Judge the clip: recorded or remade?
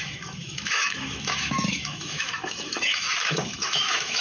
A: remade